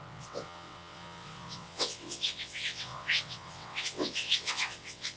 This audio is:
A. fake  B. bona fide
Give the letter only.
A